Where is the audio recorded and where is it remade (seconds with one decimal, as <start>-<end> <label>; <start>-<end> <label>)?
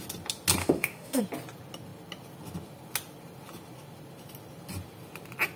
0.0-0.6 recorded; 0.6-1.2 remade; 1.2-5.6 recorded